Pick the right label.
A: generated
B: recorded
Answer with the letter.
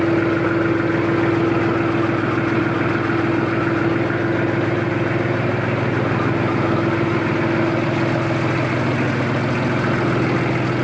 B